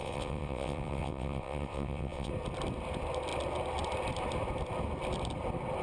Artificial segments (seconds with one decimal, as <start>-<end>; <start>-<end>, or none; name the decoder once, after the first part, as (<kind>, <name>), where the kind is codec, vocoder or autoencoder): 0.0-2.3 (vocoder, WaveNeXt)